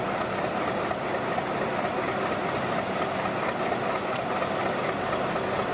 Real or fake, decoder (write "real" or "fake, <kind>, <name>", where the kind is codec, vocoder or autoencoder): real